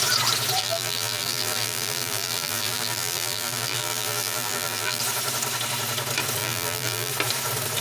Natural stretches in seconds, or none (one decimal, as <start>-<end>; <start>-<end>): 0.0-0.6; 5.0-6.4; 7.1-7.8